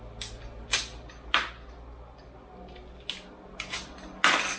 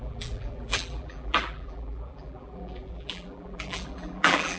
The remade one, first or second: second